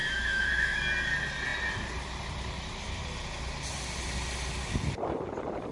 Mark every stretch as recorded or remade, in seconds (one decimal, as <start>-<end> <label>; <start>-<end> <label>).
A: 0.0-0.8 remade; 0.8-5.7 recorded